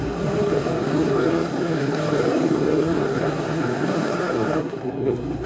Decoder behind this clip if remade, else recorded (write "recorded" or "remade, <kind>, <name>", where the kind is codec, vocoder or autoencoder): remade, codec, SNAC